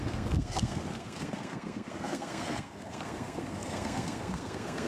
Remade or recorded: remade